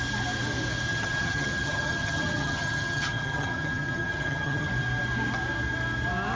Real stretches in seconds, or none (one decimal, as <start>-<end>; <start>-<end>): 0.0-0.9; 4.7-6.4